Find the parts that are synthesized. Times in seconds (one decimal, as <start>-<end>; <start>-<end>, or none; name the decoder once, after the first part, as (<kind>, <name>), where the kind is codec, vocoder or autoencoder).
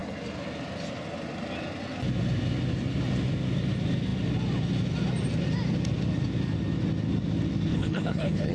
7.7-8.5 (codec, HILCodec)